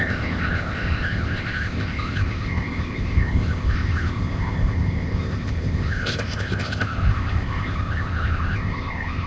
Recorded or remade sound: remade